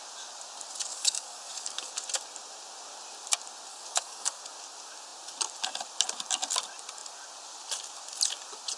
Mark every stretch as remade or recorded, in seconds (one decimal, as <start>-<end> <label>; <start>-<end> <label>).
0.0-0.9 recorded; 0.9-1.9 remade; 1.9-3.7 recorded; 3.7-4.4 remade; 4.4-8.8 recorded